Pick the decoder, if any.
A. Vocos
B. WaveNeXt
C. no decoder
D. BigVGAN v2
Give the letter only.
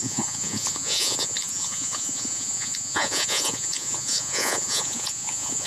A